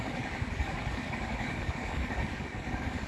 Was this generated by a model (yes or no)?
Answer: yes